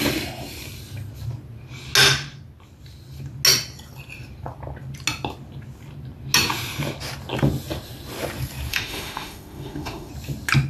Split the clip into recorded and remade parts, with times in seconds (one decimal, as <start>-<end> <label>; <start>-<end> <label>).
0.0-8.7 recorded; 8.7-10.1 remade; 10.1-10.7 recorded